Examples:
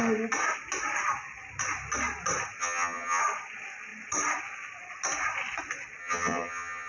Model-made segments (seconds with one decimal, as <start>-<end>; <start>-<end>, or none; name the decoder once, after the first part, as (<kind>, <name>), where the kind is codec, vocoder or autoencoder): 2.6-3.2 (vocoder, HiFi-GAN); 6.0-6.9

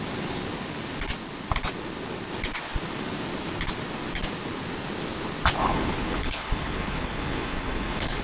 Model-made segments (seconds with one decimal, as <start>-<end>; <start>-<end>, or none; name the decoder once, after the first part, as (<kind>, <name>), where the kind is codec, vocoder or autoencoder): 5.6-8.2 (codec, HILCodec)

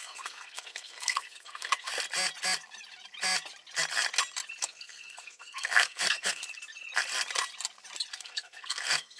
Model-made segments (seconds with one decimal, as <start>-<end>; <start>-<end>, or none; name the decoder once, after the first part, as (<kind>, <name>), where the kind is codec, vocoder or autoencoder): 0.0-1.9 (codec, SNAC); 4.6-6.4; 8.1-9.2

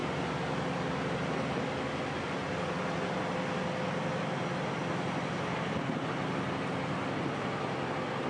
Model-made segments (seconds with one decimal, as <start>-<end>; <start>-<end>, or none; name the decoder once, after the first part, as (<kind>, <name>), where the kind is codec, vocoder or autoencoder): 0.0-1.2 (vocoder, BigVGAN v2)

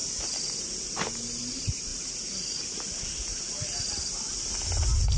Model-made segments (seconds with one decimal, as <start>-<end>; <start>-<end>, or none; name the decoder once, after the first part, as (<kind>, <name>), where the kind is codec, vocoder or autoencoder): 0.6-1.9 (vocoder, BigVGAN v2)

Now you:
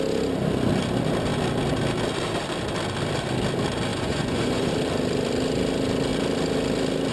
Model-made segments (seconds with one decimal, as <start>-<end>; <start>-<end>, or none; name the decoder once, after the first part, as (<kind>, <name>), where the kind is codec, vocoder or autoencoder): 3.9-4.7 (vocoder, Vocos)

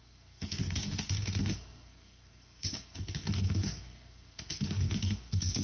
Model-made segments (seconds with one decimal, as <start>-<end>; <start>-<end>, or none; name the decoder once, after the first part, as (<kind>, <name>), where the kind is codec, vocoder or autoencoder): 0.0-5.6 (codec, SNAC)